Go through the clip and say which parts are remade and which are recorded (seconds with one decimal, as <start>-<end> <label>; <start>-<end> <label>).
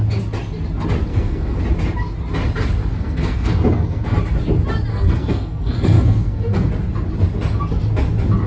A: 0.0-1.1 recorded; 1.1-1.6 remade; 1.6-2.9 recorded; 2.9-4.2 remade; 4.2-4.9 recorded; 4.9-6.7 remade; 6.7-8.5 recorded